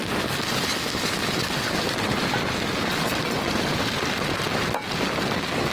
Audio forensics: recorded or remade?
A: recorded